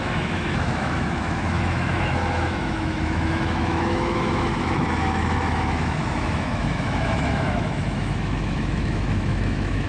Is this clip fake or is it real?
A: fake